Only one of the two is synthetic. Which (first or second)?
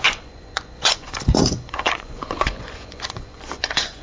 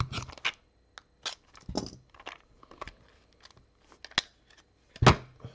first